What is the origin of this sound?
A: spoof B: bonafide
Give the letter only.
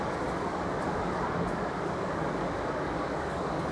A